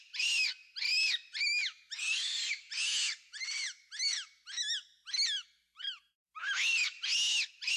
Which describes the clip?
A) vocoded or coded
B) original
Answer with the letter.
B